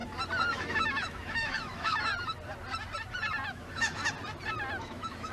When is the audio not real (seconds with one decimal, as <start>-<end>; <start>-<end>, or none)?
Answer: 0.5-2.1; 3.5-4.0; 4.8-5.3